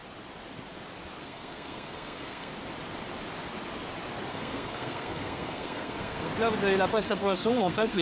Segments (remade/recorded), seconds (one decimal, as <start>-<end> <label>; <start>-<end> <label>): 0.0-1.2 recorded; 1.2-2.5 remade; 2.5-4.3 recorded; 4.3-6.3 remade; 6.3-6.9 recorded; 6.9-8.0 remade